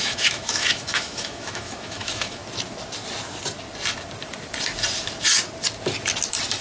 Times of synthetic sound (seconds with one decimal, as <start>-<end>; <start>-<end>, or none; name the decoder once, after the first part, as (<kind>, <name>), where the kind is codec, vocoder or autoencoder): 0.0-2.4 (autoencoder, DAC-VAE)